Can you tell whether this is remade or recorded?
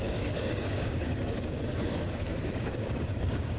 remade